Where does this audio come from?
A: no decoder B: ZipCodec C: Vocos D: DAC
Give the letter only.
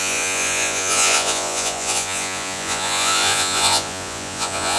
C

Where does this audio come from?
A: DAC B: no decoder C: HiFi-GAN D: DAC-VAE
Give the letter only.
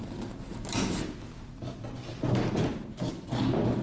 B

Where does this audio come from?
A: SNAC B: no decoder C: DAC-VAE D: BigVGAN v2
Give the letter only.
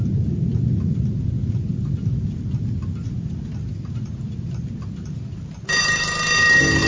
B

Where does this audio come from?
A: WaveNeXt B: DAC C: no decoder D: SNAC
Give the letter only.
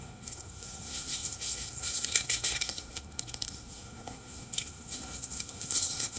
D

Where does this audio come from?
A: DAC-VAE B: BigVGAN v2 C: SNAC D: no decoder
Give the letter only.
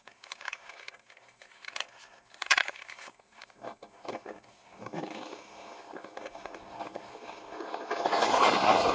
C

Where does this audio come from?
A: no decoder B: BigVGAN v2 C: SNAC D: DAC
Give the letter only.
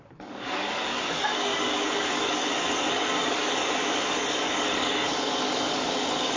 D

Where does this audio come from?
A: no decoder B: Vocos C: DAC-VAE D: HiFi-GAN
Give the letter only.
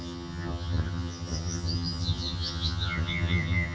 D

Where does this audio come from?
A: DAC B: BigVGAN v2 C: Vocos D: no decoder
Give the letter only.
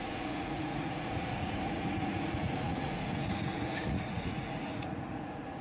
C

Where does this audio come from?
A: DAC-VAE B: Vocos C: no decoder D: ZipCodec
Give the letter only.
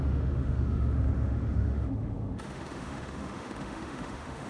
A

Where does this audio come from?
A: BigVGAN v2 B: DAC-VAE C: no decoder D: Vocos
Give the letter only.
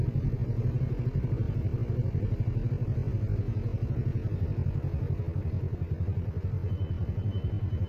C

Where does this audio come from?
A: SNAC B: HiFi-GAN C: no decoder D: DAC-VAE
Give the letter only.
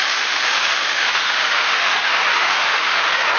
D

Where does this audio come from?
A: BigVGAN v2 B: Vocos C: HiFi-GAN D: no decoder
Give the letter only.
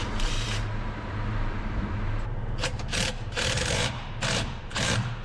A